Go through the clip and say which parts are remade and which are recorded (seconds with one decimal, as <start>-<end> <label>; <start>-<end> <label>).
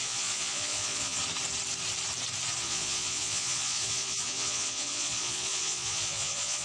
0.0-1.2 remade; 1.2-2.6 recorded; 2.6-6.6 remade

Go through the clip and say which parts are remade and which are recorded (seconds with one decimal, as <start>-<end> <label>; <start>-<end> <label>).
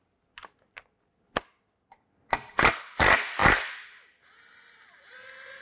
0.0-5.6 recorded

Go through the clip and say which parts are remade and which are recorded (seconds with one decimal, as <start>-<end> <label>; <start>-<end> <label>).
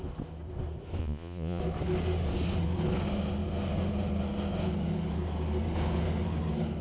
0.0-1.0 recorded; 1.0-1.6 remade; 1.6-6.8 recorded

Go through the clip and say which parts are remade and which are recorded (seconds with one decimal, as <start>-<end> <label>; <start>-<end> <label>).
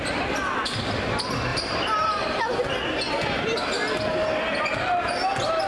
0.0-1.5 recorded; 1.5-2.4 remade; 2.4-5.7 recorded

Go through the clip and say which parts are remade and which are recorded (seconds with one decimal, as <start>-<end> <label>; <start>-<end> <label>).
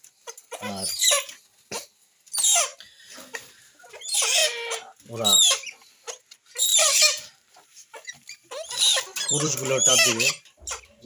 0.0-6.7 recorded; 6.7-9.9 remade; 9.9-11.1 recorded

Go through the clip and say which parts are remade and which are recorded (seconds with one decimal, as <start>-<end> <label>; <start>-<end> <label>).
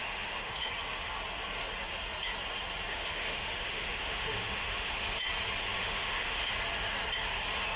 0.0-0.7 remade; 0.7-2.9 recorded; 2.9-5.1 remade; 5.1-5.8 recorded; 5.8-6.5 remade; 6.5-7.8 recorded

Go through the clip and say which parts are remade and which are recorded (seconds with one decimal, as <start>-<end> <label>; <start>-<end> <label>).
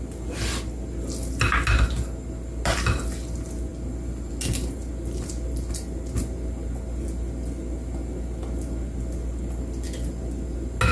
0.0-10.9 recorded